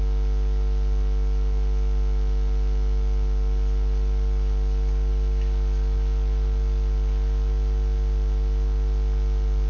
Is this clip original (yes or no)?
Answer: yes